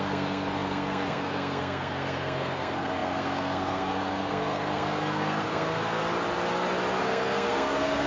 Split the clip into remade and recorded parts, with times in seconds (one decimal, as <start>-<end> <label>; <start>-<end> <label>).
0.0-6.0 remade; 6.0-7.0 recorded; 7.0-8.1 remade